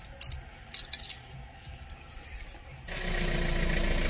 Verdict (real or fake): real